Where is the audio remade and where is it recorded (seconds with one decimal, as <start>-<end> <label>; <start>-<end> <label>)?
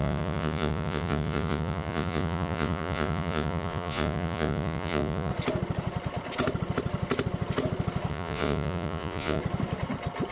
0.0-5.3 remade; 5.3-8.1 recorded; 8.1-9.4 remade; 9.4-10.3 recorded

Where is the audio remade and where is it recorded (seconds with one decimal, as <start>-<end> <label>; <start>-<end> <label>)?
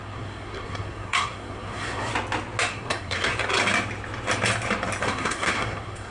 0.0-2.1 remade; 2.1-2.7 recorded; 2.7-3.3 remade; 3.3-5.0 recorded; 5.0-6.1 remade